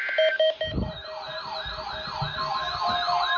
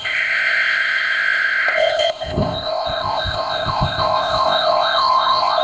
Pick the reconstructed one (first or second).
second